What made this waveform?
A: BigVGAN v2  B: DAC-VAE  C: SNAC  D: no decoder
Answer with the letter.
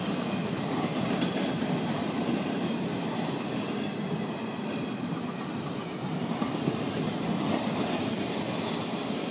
A